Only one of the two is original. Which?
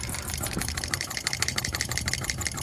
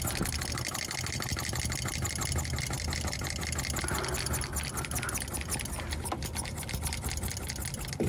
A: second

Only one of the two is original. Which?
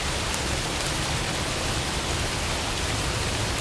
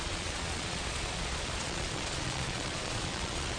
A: first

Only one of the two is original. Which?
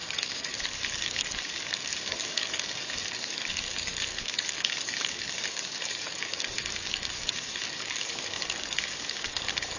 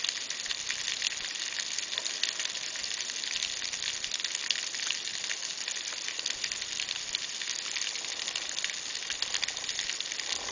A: second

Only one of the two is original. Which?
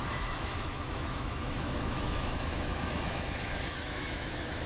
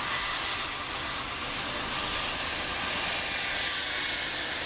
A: second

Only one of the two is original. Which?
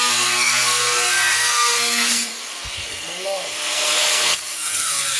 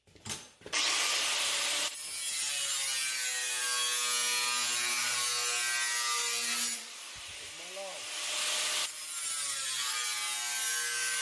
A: second